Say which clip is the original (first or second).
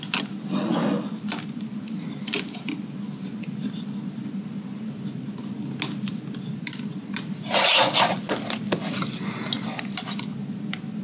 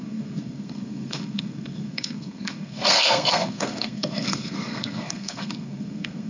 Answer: first